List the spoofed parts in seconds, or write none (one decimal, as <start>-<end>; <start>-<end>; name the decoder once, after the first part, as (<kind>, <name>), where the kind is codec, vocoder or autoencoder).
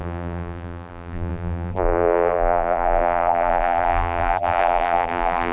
0.0-5.5 (vocoder, BigVGAN v2)